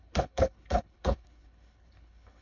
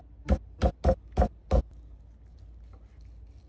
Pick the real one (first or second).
second